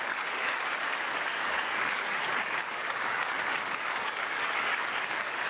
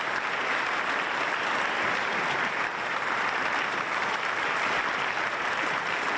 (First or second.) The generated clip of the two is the first